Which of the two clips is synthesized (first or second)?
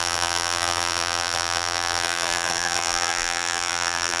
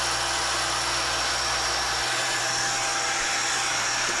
first